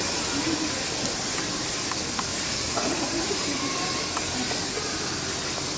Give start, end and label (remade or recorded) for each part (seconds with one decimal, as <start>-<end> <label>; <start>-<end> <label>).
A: 0.0-2.3 recorded; 2.3-3.4 remade; 3.4-5.8 recorded